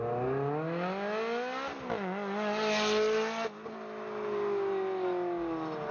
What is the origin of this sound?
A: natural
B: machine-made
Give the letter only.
A